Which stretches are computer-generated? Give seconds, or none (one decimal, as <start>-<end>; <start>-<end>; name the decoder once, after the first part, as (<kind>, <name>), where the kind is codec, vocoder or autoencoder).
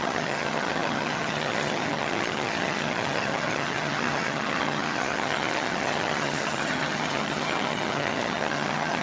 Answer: 0.0-9.0 (vocoder, HiFi-GAN)